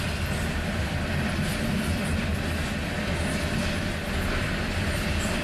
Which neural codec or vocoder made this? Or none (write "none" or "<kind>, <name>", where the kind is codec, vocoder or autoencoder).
none